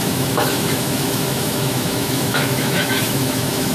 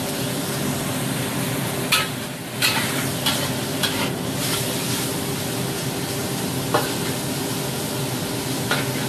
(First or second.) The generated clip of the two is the first